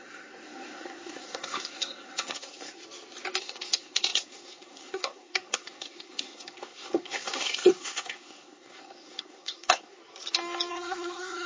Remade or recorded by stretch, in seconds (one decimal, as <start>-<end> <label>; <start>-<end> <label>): 0.0-2.8 remade; 2.8-3.4 recorded; 3.4-10.0 remade; 10.0-10.7 recorded; 10.7-11.5 remade